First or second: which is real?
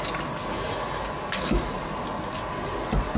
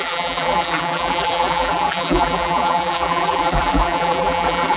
first